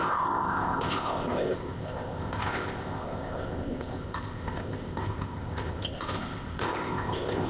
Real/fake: fake